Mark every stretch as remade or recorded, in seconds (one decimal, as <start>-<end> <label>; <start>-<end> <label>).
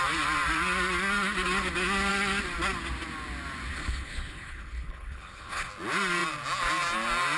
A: 0.0-3.7 recorded; 3.7-5.7 remade; 5.7-7.4 recorded